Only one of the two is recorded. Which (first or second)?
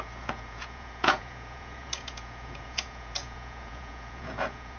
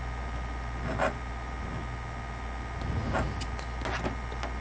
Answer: second